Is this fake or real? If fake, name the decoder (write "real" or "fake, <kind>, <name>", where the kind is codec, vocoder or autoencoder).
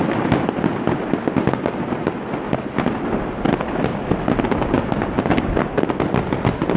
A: real